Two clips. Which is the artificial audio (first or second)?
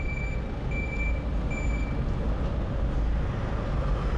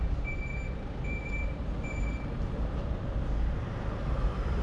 second